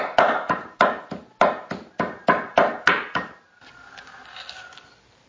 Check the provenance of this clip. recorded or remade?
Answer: recorded